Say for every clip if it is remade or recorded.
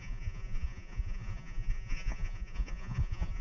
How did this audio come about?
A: remade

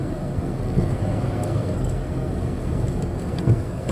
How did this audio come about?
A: remade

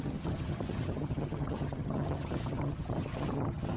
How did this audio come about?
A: remade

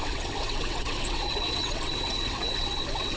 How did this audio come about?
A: remade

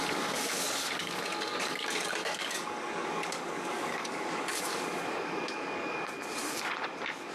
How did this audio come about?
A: remade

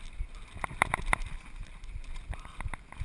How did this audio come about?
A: recorded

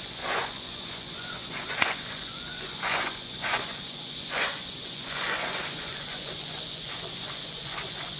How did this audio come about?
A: remade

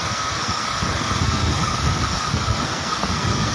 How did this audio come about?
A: remade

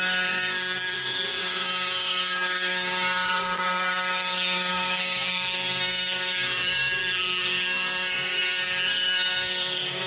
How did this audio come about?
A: remade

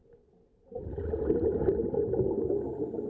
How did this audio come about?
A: recorded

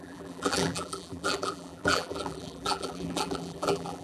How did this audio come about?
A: remade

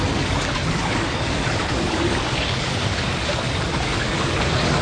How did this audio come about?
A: remade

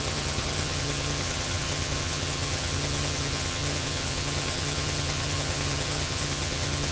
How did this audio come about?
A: remade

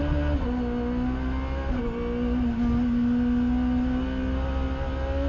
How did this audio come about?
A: recorded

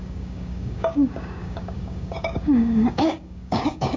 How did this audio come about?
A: remade